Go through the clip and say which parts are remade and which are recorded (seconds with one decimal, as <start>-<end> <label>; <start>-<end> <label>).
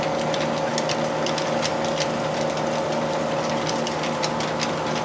0.0-5.0 recorded